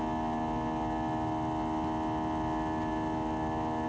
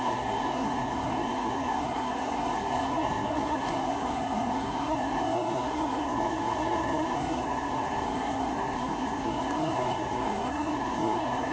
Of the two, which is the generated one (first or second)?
second